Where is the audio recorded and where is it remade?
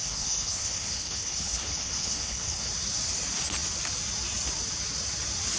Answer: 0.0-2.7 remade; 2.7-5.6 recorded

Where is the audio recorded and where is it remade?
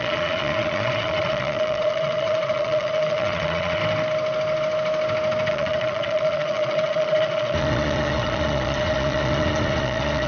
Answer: 0.0-3.8 remade; 3.8-5.5 recorded; 5.5-10.3 remade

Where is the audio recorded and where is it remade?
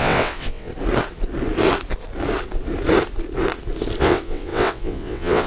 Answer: 0.0-0.7 remade; 0.7-4.0 recorded; 4.0-5.5 remade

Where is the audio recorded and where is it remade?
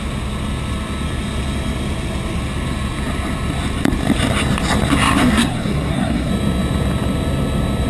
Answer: 0.0-5.2 recorded; 5.2-6.3 remade; 6.3-7.9 recorded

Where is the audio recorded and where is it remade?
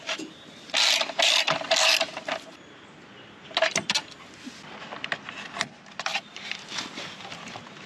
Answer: 0.0-6.1 recorded; 6.1-6.7 remade; 6.7-7.9 recorded